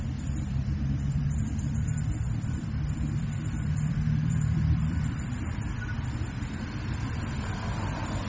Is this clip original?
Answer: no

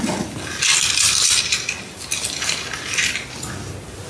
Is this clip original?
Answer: yes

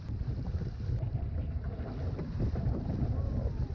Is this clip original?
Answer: yes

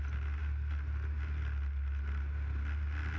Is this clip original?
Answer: yes